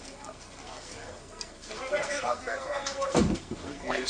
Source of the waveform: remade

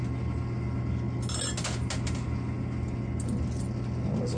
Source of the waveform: recorded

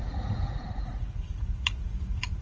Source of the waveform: remade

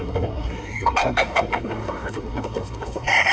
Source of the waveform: remade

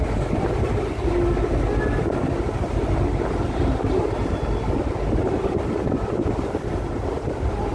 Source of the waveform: recorded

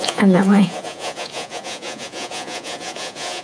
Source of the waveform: remade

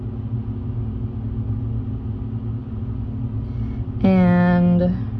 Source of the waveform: recorded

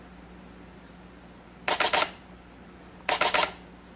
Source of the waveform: recorded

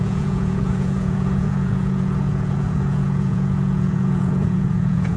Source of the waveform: remade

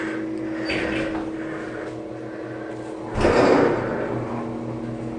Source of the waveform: recorded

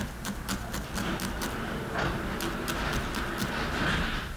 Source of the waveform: recorded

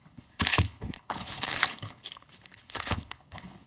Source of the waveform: remade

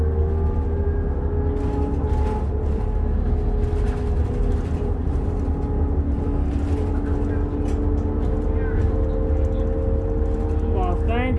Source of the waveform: recorded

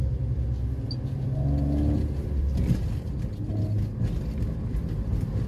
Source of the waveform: recorded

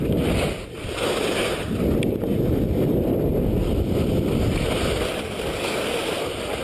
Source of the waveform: recorded